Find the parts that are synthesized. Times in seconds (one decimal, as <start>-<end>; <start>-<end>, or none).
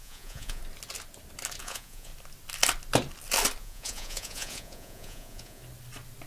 0.0-0.6; 1.6-2.1; 3.6-5.6